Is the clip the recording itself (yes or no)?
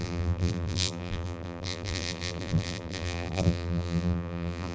no